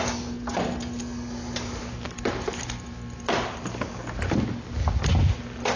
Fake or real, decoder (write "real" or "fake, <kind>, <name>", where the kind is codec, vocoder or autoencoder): real